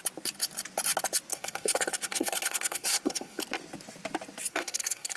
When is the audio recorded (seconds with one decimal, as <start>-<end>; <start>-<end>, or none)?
0.0-1.3; 3.4-4.5